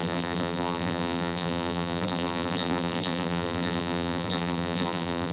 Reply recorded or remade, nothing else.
remade